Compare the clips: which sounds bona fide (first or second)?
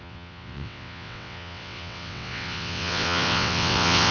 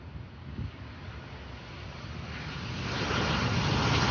second